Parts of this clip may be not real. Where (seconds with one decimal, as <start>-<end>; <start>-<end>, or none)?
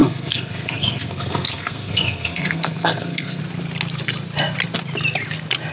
0.0-3.4